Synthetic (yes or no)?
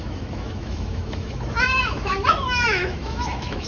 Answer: yes